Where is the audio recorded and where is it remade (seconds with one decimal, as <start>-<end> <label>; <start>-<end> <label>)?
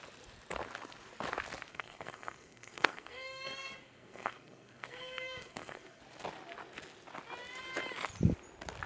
0.0-1.7 recorded; 1.7-6.0 remade; 6.0-8.9 recorded